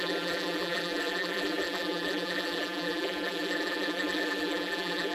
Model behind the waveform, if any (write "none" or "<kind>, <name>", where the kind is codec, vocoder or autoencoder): vocoder, BigVGAN v2